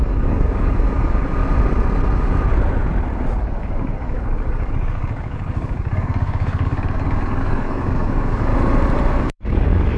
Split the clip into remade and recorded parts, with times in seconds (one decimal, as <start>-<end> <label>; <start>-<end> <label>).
0.0-1.4 remade; 1.4-3.4 recorded; 3.4-8.5 remade; 8.5-9.2 recorded; 9.2-10.0 remade

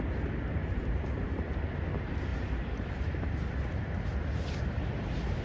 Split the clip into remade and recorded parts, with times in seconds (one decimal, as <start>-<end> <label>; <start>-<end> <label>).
0.0-0.6 recorded; 0.6-1.5 remade; 1.5-2.3 recorded; 2.3-4.1 remade; 4.1-5.4 recorded

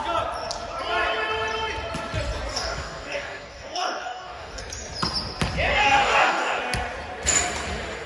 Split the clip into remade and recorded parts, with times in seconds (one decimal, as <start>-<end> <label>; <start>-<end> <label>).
0.0-2.5 recorded; 2.5-4.6 remade; 4.6-5.7 recorded; 5.7-6.6 remade; 6.6-8.1 recorded

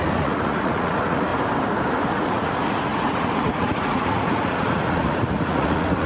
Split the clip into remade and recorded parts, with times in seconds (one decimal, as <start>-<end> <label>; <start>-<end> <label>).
0.0-1.3 remade; 1.3-2.1 recorded; 2.1-6.1 remade

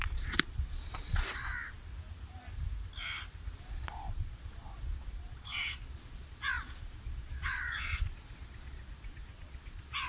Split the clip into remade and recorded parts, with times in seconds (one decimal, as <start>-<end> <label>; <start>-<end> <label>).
0.0-1.5 remade; 1.5-3.6 recorded; 3.6-10.1 remade

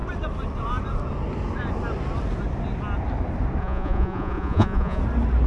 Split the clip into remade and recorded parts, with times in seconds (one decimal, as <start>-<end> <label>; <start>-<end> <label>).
0.0-3.6 recorded; 3.6-5.0 remade; 5.0-5.5 recorded

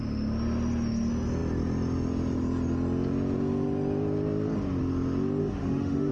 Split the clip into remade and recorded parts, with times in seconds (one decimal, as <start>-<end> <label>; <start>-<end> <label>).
0.0-5.4 recorded; 5.4-6.1 remade